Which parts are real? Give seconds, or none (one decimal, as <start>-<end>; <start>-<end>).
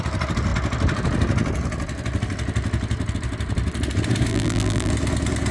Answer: 0.0-4.3; 4.9-5.5